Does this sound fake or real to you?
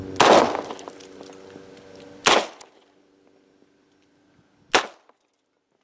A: real